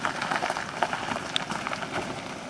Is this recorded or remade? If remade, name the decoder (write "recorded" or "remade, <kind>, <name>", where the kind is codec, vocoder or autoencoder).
recorded